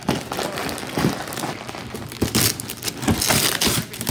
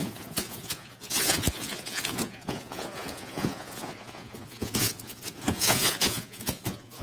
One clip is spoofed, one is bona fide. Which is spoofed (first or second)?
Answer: second